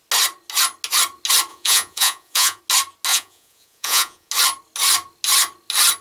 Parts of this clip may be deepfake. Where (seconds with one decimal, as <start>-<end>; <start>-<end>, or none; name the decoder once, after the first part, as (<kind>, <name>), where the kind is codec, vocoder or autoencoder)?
1.5-2.6 (vocoder, Vocos); 3.1-4.3